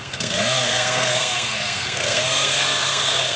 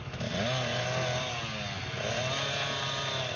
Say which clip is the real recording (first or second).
second